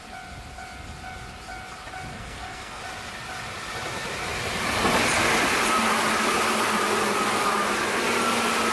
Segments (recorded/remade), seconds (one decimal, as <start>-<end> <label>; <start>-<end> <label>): 0.0-2.1 recorded; 2.1-2.8 remade; 2.8-8.7 recorded